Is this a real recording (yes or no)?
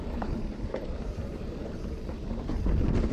no